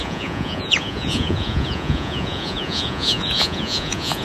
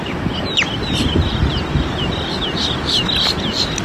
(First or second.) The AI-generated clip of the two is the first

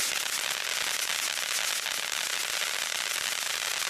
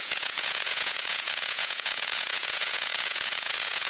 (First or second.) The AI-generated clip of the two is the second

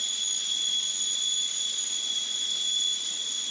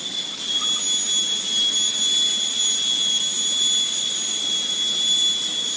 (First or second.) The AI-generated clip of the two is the first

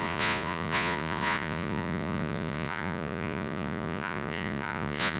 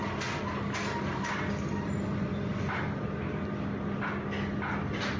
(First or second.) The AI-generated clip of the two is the first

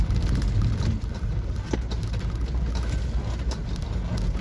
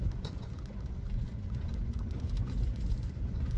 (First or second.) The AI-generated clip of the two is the second